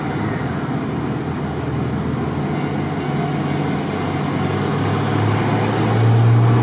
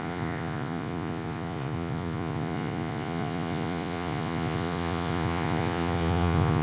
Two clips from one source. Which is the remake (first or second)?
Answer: second